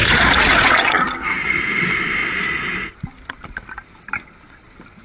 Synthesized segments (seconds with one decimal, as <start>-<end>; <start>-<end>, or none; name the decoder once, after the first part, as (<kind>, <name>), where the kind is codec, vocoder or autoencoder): 0.0-1.0 (vocoder, Vocos); 2.2-2.9

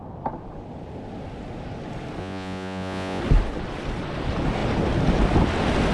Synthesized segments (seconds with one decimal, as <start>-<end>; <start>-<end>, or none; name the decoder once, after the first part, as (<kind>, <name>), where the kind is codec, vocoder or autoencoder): 2.2-3.2 (vocoder, Vocos)

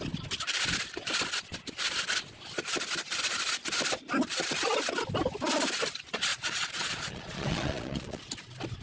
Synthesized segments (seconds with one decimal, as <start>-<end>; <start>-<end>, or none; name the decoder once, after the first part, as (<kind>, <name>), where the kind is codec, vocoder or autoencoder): 6.3-8.2 (vocoder, Vocos)

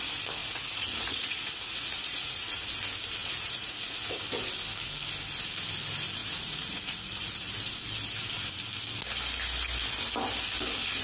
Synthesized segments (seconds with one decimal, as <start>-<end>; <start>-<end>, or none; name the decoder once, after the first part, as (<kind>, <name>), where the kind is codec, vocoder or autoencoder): 0.4-2.7 (vocoder, Vocos); 3.2-4.2; 6.2-7.5

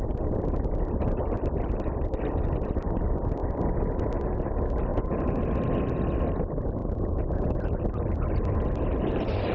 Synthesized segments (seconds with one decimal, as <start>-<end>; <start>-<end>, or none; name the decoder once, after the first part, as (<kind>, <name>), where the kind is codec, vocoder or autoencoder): 4.9-5.4 (vocoder, Vocos); 6.8-7.6

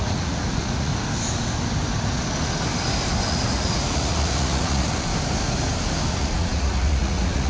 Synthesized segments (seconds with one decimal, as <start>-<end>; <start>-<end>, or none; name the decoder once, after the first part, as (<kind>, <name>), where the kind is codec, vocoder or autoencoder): 0.0-0.9 (vocoder, Vocos); 3.3-5.1; 6.1-7.5

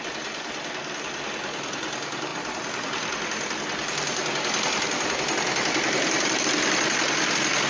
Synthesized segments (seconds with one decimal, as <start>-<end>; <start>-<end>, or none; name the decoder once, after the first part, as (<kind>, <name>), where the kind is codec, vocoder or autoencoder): none